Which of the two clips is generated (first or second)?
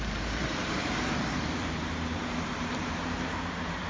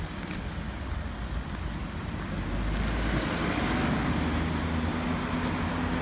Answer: first